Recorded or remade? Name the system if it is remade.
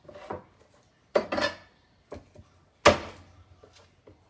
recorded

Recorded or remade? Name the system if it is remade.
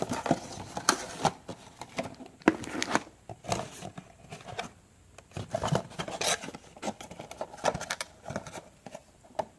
recorded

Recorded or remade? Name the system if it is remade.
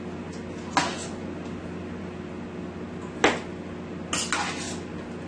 recorded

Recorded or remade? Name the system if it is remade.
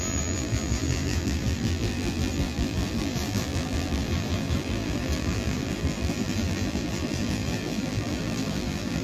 remade, vocoder, BigVGAN v2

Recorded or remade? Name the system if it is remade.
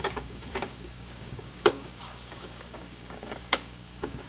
remade, codec, DAC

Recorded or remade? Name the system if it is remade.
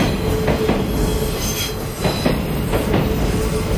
recorded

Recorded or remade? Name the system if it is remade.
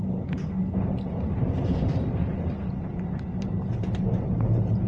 recorded